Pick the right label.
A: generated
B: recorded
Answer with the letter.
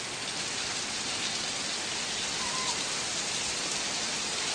B